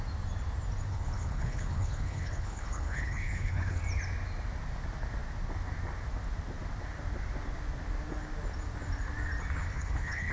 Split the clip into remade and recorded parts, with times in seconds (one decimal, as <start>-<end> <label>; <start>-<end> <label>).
0.0-0.9 recorded; 0.9-3.8 remade; 3.8-9.7 recorded; 9.7-10.3 remade

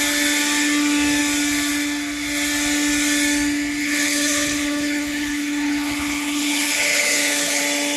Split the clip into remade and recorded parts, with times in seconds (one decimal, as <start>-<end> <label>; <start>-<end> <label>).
0.0-3.8 recorded; 3.8-7.6 remade; 7.6-8.0 recorded

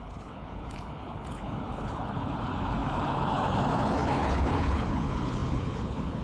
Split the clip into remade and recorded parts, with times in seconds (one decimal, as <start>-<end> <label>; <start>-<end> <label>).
0.0-6.2 remade